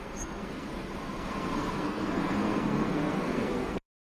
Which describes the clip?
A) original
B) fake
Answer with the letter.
B